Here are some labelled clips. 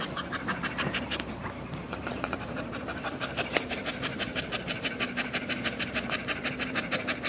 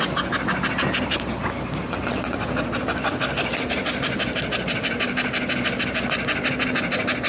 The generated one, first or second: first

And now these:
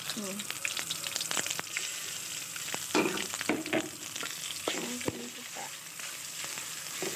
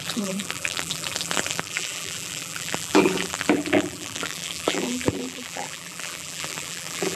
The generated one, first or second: second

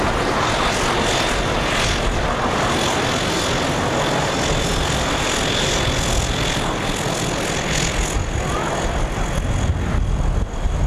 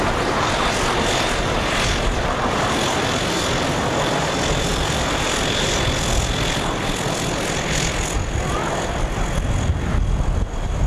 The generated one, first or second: second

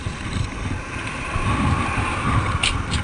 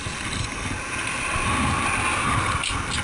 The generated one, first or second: first